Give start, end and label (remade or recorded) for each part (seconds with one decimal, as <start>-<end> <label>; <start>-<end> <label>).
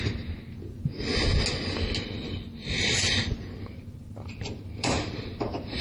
0.0-1.1 remade; 1.1-3.6 recorded; 3.6-5.8 remade